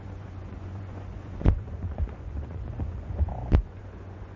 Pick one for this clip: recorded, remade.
remade